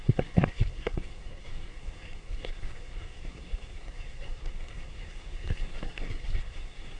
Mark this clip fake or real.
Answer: fake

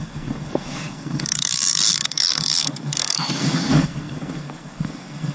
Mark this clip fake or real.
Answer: fake